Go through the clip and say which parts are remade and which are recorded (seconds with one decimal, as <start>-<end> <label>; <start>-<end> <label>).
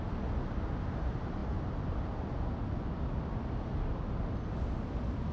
0.0-5.3 recorded